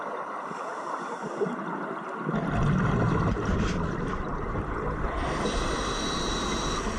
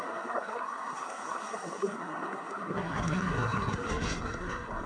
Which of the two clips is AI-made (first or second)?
second